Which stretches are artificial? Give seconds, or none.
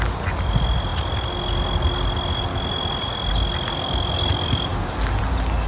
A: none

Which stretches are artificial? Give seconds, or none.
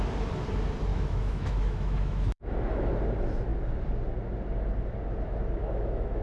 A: 0.9-2.9; 5.6-6.2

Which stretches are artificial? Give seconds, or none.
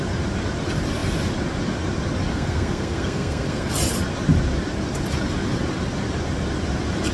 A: 2.3-3.7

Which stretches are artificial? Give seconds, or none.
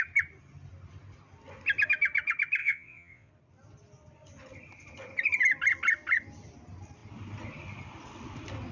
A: 2.6-3.3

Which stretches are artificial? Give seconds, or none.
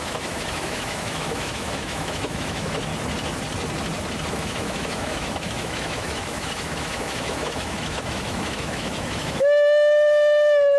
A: 0.0-2.9; 4.3-10.8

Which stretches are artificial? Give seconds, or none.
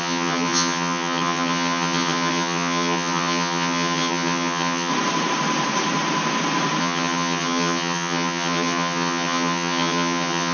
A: 0.0-4.9; 6.8-10.5